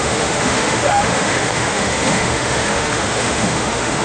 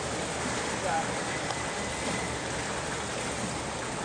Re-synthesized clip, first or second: first